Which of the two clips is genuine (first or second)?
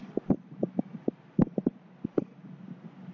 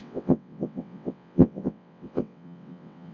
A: first